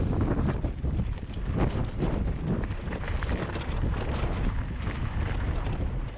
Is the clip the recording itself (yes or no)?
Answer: yes